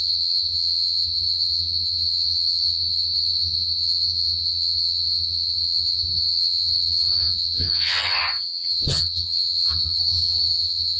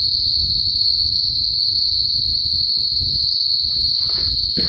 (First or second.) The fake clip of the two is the first